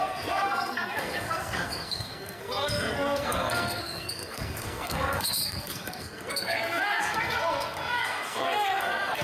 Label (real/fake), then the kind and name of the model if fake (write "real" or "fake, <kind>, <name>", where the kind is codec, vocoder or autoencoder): fake, codec, SNAC